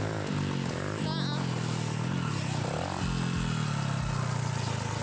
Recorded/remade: recorded